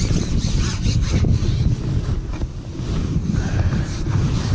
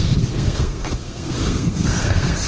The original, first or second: first